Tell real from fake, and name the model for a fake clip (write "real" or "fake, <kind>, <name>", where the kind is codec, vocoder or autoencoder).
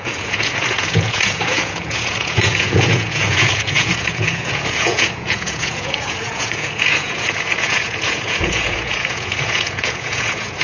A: fake, vocoder, Vocos